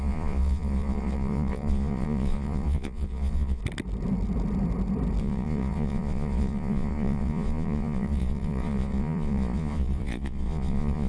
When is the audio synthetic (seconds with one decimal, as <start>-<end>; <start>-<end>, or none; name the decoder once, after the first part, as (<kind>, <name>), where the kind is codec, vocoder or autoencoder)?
0.0-3.6 (vocoder, Vocos); 5.2-11.1

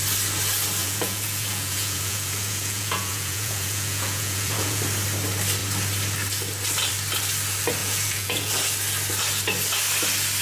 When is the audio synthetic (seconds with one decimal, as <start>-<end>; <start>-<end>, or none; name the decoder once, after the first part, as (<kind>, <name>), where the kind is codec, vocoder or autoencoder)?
0.8-4.8 (vocoder, Vocos); 7.8-8.5

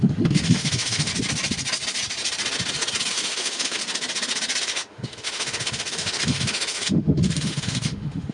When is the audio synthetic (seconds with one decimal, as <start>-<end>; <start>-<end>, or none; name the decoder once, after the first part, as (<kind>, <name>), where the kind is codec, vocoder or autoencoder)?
0.0-1.1 (autoencoder, DAC-VAE); 3.1-3.8; 4.6-8.3

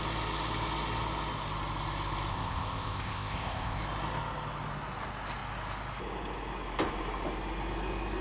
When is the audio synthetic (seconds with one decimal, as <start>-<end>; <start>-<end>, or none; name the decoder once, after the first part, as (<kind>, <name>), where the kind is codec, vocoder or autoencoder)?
2.3-3.8 (codec, ZipCodec)

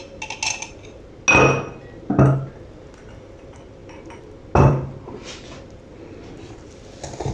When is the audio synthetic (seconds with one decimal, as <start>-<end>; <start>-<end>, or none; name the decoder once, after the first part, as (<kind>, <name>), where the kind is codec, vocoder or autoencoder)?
none

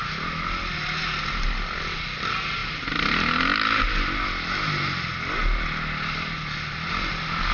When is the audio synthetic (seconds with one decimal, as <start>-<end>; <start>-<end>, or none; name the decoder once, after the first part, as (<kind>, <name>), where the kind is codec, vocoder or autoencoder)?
none

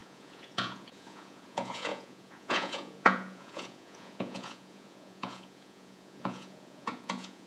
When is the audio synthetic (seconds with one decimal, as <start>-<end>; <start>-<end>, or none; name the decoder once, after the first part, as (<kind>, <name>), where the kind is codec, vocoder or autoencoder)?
0.0-7.5 (vocoder, Vocos)